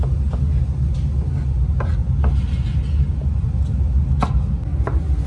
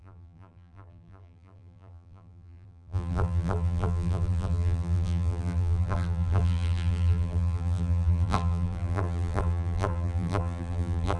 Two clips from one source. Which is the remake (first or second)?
second